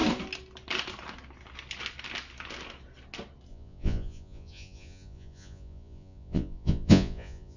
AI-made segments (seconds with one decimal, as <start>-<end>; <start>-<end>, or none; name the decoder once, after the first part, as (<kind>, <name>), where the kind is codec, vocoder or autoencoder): 3.5-7.6 (vocoder, Vocos)